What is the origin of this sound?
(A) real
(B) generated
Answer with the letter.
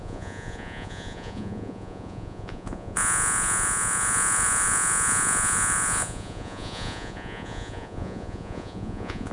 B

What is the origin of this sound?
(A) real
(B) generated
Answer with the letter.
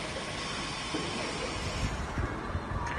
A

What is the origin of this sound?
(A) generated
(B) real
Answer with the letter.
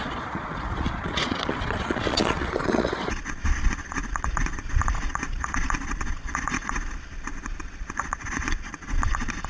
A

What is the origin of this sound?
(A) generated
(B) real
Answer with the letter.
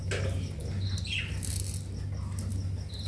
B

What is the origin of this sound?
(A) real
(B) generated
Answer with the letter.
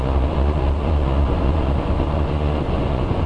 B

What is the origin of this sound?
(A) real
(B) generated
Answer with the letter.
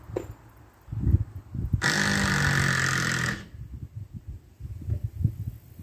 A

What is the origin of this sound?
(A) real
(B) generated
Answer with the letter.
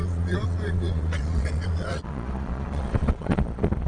B